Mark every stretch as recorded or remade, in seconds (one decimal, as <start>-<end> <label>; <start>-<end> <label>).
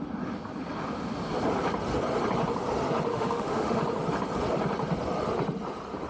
0.0-3.1 recorded; 3.1-3.8 remade; 3.8-6.1 recorded